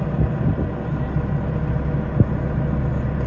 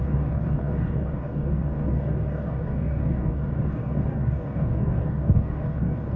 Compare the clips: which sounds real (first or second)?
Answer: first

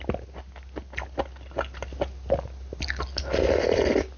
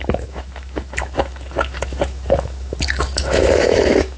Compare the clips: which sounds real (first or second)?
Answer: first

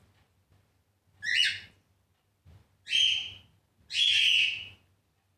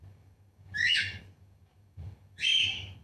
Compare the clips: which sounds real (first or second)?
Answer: first